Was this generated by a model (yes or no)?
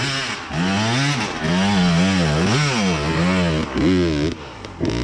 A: no